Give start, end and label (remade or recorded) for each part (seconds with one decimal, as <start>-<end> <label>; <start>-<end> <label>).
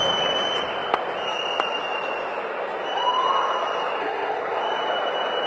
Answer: 0.0-4.0 recorded; 4.0-4.6 remade; 4.6-5.5 recorded